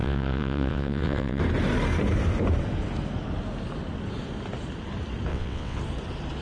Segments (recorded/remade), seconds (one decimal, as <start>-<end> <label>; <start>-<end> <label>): 0.0-1.4 remade; 1.4-5.3 recorded; 5.3-5.8 remade; 5.8-6.4 recorded

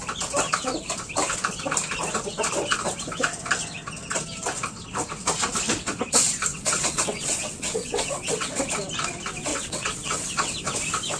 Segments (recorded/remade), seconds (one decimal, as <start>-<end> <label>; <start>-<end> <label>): 0.0-6.5 recorded; 6.5-8.7 remade; 8.7-9.5 recorded; 9.5-10.6 remade; 10.6-11.2 recorded

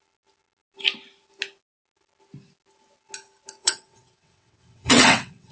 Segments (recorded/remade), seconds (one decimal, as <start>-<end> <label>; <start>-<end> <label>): 0.0-3.6 recorded; 3.6-5.5 remade

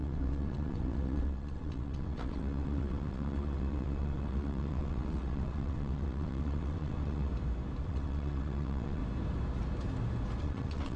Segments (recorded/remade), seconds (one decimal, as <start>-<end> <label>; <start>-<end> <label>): 0.0-7.3 remade; 7.3-7.8 recorded; 7.8-9.0 remade; 9.0-10.4 recorded; 10.4-11.0 remade